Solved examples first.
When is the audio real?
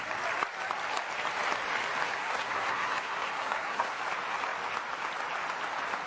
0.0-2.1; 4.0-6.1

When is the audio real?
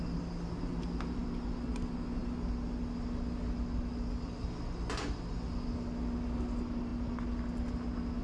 0.0-8.2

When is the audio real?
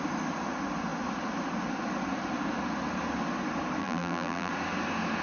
0.0-3.8; 4.5-5.2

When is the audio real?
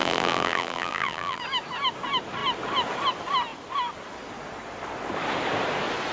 1.4-6.1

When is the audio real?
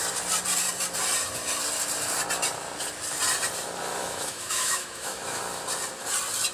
0.0-4.0; 5.4-6.5